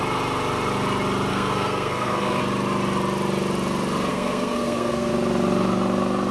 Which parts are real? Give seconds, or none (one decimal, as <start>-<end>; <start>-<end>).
0.0-1.3; 2.4-4.1; 5.1-6.3